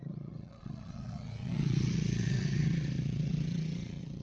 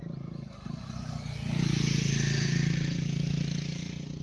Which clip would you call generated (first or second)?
first